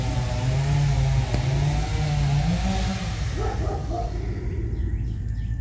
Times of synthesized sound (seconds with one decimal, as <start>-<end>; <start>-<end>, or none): none